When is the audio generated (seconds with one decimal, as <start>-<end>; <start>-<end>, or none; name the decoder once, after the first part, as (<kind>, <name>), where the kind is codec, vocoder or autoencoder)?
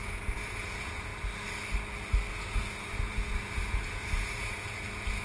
0.0-1.1 (vocoder, Vocos); 2.3-5.2